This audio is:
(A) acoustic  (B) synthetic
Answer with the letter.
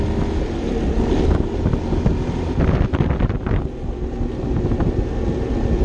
A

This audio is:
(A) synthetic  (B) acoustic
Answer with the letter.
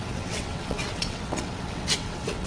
A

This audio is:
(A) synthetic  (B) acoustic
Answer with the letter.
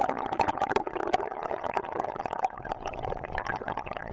A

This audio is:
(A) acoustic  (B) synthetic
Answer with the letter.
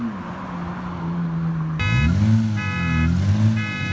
A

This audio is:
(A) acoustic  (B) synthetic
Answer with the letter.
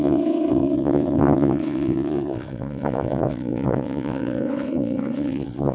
B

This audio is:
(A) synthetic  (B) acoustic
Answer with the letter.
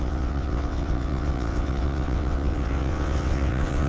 A